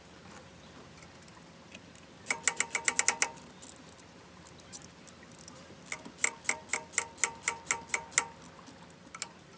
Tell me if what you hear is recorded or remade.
recorded